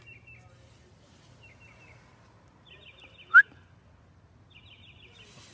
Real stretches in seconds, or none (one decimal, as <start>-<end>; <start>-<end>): 0.0-5.5